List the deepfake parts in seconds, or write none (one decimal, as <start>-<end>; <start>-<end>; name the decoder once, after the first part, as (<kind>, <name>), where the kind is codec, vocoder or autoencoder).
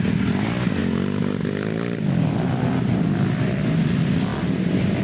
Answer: 4.3-5.0 (vocoder, BigVGAN v2)